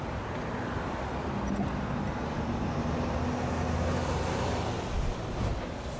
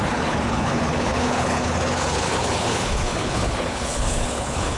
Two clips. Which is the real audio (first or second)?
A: first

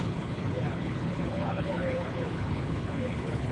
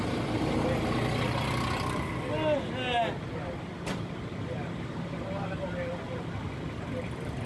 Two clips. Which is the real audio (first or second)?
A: second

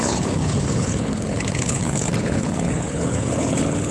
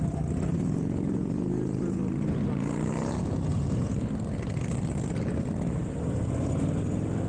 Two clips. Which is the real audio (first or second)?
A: second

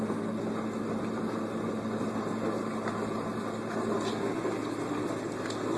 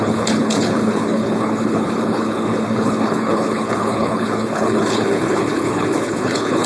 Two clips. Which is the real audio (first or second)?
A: first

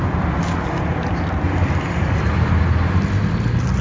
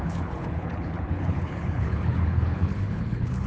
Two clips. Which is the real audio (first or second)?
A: first